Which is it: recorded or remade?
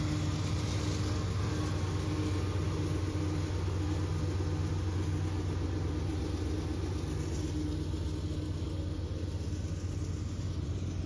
recorded